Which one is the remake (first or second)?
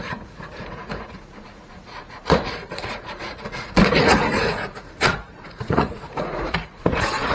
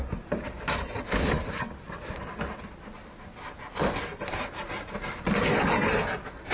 first